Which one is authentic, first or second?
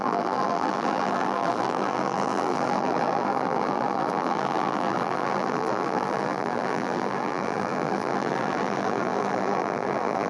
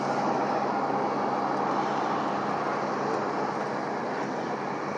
second